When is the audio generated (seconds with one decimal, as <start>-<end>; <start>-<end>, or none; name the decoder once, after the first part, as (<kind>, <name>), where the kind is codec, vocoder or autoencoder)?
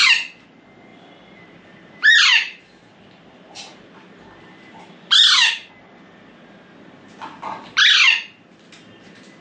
0.9-5.7 (vocoder, BigVGAN v2)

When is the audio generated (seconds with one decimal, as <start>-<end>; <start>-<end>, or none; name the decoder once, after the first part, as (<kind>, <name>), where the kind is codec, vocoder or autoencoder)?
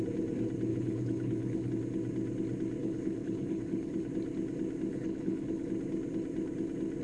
0.7-1.7 (codec, HILCodec); 2.8-4.1; 4.9-5.7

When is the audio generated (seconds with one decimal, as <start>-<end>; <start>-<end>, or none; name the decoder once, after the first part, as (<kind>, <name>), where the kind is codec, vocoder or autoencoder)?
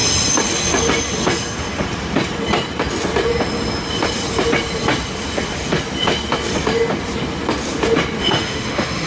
8.2-9.1 (autoencoder, DAC-VAE)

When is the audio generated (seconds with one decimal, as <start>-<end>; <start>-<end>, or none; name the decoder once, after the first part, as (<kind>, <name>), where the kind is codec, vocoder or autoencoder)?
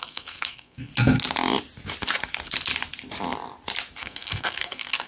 0.0-0.9 (codec, SNAC); 4.0-5.1